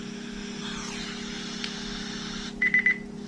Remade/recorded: recorded